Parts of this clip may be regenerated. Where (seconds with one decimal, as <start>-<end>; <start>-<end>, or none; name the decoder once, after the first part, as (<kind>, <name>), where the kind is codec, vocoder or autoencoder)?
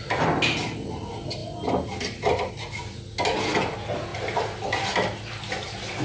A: 1.4-2.5 (vocoder, BigVGAN v2)